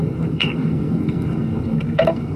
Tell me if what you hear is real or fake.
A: fake